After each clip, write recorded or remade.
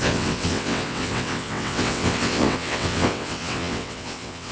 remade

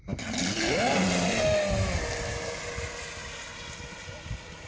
recorded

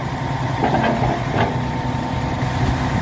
recorded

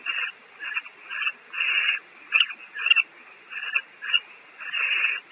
recorded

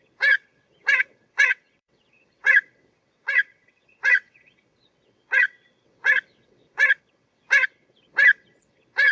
remade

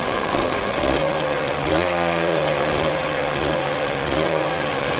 remade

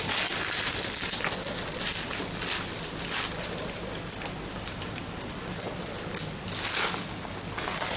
recorded